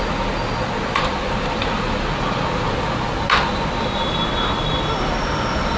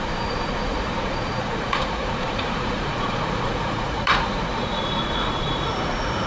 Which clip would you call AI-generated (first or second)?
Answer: second